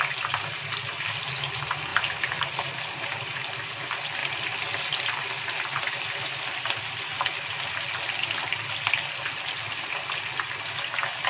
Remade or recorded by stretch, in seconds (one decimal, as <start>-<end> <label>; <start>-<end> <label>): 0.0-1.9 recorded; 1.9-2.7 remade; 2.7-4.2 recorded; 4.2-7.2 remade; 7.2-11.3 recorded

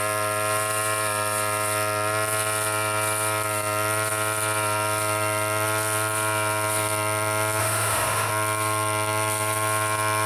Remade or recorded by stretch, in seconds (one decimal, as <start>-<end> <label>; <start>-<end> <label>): 0.0-7.6 recorded; 7.6-8.3 remade; 8.3-10.3 recorded

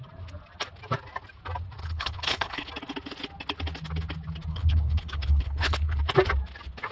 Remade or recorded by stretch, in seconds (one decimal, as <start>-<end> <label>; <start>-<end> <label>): 0.0-1.8 recorded; 1.8-2.7 remade; 2.7-4.5 recorded; 4.5-6.0 remade; 6.0-6.9 recorded

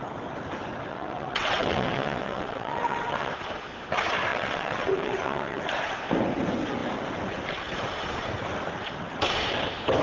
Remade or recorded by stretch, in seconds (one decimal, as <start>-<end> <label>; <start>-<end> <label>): 0.0-0.9 recorded; 0.9-3.3 remade; 3.3-4.3 recorded; 4.3-5.6 remade; 5.6-10.0 recorded

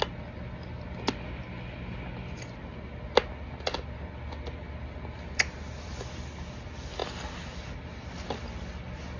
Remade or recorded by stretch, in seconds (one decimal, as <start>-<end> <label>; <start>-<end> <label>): 0.0-9.2 recorded

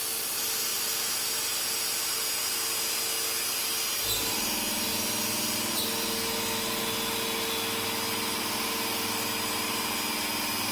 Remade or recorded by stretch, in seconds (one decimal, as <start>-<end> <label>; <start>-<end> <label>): 0.0-10.7 recorded

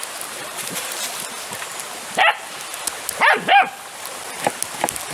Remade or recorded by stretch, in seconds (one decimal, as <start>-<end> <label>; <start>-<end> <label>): 0.0-0.4 recorded; 0.4-0.9 remade; 0.9-5.1 recorded

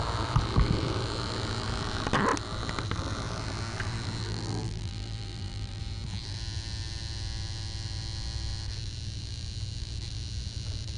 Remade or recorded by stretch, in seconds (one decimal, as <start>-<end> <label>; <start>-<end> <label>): 0.0-4.2 recorded; 4.2-5.8 remade; 5.8-11.0 recorded